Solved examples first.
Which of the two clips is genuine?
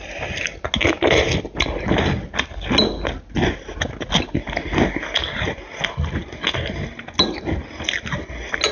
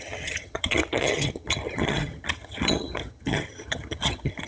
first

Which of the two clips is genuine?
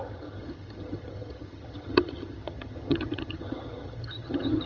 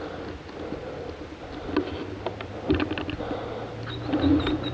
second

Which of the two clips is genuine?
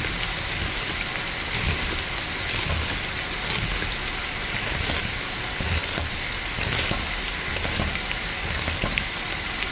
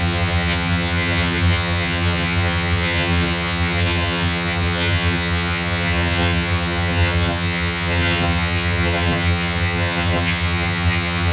first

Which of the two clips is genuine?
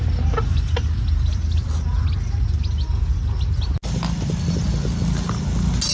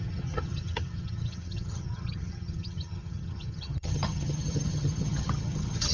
first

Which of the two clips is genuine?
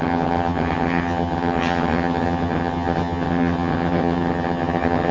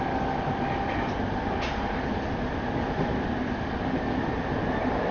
second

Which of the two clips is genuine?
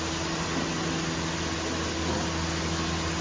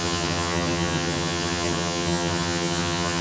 first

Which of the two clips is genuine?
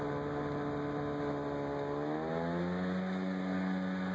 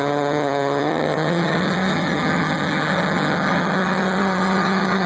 first